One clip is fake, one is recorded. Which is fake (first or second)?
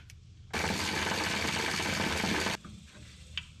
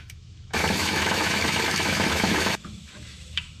second